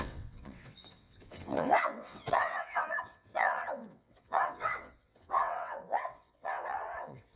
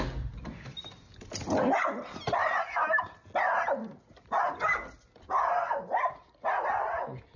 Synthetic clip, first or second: first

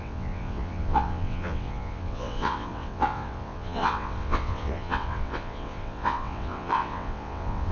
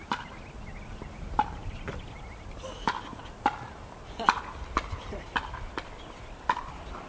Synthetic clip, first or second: first